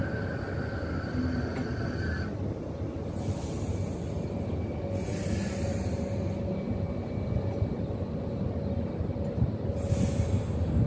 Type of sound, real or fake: real